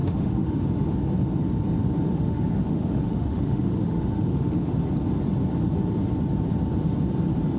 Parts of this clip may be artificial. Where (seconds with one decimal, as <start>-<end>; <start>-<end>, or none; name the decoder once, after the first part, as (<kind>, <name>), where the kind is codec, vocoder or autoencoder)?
0.0-0.6 (autoencoder, DAC-VAE); 2.1-4.7